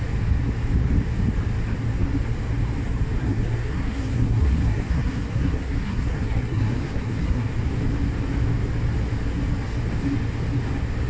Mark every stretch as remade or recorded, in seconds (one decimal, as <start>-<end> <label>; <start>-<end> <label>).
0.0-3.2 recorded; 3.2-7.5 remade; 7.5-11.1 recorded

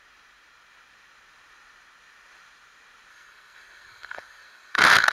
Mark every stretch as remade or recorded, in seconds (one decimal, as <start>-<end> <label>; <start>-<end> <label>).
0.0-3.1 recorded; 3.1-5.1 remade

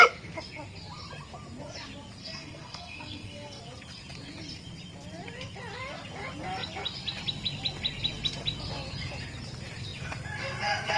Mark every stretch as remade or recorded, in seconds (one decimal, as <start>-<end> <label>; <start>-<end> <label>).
0.0-2.2 recorded; 2.2-3.6 remade; 3.6-11.0 recorded